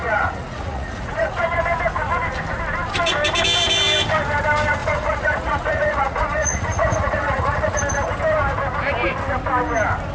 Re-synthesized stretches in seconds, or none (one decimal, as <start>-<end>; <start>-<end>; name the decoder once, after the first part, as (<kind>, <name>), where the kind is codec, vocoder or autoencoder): 0.0-1.4 (vocoder, Vocos); 4.8-7.8